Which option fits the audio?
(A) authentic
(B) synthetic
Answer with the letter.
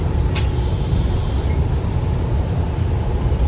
A